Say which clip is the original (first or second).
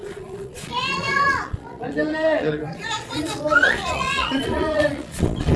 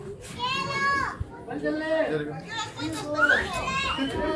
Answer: second